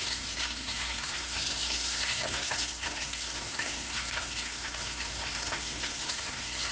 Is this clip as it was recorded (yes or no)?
no